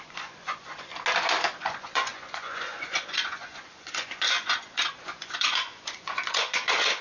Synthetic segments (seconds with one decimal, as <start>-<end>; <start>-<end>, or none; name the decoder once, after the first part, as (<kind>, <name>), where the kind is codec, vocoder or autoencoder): 0.0-0.9 (vocoder, Vocos); 1.6-7.0